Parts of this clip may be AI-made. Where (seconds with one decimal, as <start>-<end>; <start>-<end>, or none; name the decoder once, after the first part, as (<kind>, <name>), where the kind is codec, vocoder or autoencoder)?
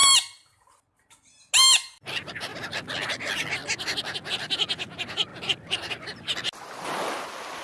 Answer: 5.3-5.9 (vocoder, BigVGAN v2)